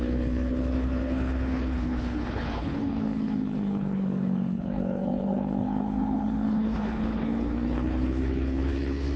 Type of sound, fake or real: fake